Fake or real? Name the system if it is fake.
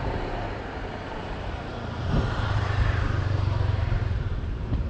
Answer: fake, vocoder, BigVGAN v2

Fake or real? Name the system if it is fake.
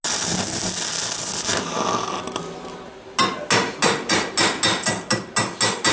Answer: real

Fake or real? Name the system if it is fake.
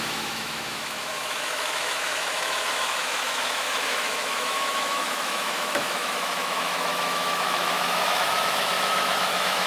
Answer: fake, autoencoder, DAC-VAE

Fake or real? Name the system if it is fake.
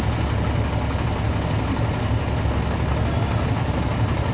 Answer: real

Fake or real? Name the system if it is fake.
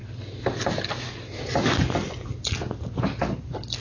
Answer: real